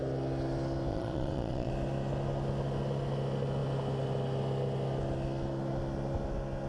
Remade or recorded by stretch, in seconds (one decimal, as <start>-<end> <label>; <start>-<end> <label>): 0.0-0.9 recorded; 0.9-1.7 remade; 1.7-6.7 recorded